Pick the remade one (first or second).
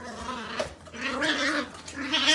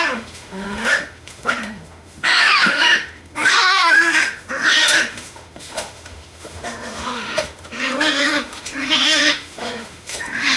second